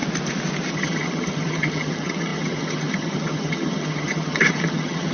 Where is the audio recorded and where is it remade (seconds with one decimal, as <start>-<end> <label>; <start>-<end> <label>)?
0.0-0.7 recorded; 0.7-5.1 remade